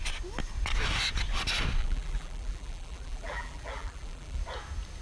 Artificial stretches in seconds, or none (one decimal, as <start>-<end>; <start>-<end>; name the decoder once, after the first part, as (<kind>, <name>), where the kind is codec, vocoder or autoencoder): 1.8-4.4 (vocoder, BigVGAN v2)